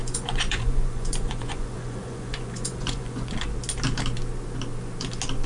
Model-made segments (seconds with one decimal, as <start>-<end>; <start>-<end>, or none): 0.0-3.3